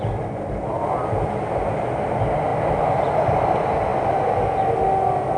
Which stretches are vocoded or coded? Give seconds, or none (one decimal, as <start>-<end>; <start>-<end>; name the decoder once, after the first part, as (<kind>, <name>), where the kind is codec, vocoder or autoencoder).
none